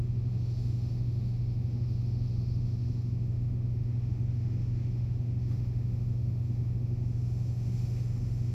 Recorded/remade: remade